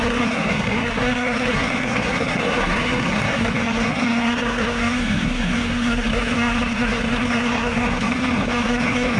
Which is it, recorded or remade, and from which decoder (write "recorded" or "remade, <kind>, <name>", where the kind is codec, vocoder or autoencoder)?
remade, codec, SNAC